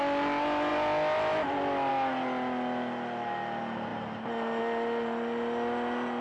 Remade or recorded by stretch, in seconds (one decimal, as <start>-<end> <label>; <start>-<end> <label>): 0.0-6.2 recorded